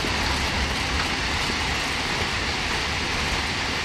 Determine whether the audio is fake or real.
real